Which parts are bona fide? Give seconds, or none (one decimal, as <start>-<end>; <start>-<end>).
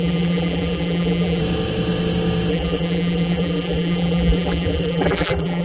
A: 1.4-2.5